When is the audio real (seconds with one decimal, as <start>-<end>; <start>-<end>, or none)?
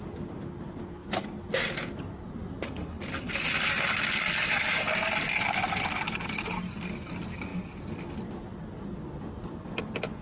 0.0-10.2